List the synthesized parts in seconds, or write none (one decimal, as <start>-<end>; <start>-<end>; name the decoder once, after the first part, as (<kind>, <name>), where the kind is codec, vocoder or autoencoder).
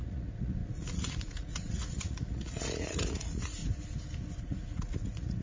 0.0-3.6 (vocoder, Vocos); 4.4-5.4